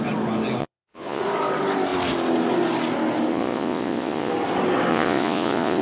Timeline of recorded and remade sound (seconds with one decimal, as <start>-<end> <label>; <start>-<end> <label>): 0.0-0.6 recorded; 0.6-1.2 remade; 1.2-3.3 recorded; 3.3-4.3 remade; 4.3-4.9 recorded; 4.9-5.8 remade